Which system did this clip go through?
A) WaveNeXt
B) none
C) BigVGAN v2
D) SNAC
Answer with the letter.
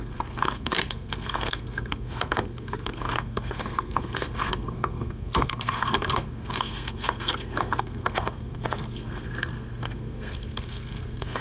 D